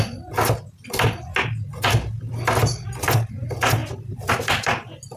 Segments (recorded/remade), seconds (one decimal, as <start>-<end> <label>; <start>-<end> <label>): 0.0-5.2 recorded